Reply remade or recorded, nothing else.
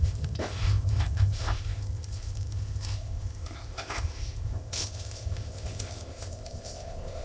remade